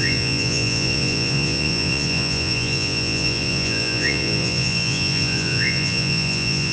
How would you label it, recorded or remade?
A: remade